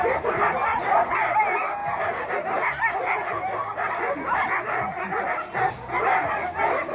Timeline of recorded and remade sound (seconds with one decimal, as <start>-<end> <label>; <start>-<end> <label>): 0.0-6.9 recorded